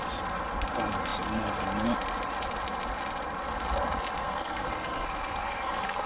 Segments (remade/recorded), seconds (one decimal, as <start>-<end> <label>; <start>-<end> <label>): 0.0-4.2 recorded; 4.2-6.1 remade